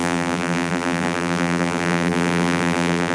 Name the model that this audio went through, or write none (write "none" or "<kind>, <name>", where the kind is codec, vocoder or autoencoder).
vocoder, BigVGAN v2